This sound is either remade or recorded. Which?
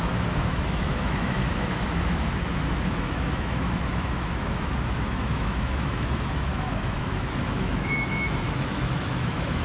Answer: remade